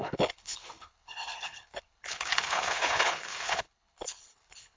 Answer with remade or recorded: remade